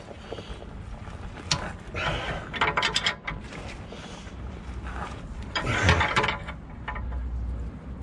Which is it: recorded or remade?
recorded